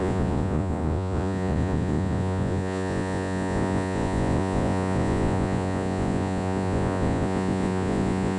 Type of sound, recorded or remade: remade